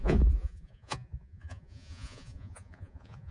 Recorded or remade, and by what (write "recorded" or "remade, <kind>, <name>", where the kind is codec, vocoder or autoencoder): remade, vocoder, Vocos